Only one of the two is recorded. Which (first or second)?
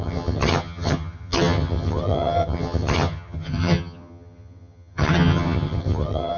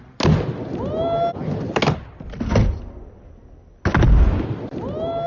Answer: second